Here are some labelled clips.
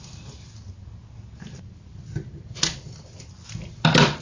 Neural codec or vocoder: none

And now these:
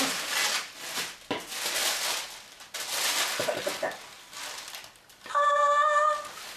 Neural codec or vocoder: none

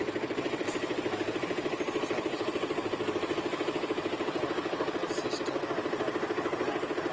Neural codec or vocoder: none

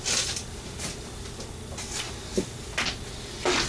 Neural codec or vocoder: none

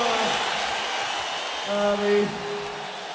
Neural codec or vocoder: none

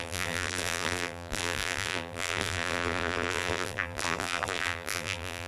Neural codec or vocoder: vocoder, BigVGAN v2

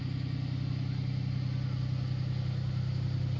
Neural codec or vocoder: none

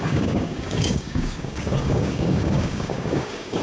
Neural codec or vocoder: codec, DAC